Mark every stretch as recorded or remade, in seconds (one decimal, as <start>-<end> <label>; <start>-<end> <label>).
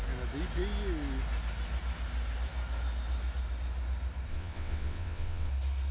0.0-4.3 recorded; 4.3-5.5 remade; 5.5-5.9 recorded